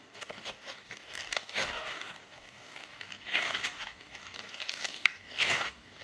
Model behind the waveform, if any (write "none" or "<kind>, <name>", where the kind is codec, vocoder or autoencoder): codec, DAC